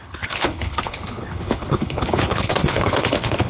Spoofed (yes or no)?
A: yes